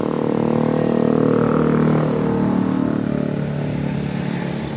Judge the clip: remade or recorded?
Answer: recorded